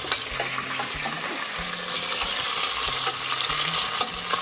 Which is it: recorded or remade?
recorded